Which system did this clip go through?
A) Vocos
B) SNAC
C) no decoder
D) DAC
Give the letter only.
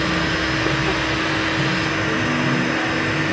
C